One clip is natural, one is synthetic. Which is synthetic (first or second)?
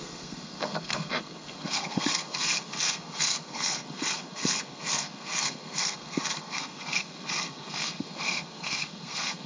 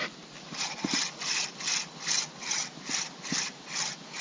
first